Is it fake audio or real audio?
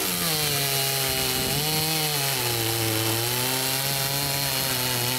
real